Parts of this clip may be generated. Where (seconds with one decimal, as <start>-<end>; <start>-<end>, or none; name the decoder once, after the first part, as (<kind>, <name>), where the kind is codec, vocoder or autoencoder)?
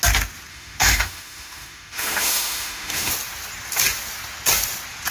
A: 0.5-3.1 (autoencoder, DAC-VAE)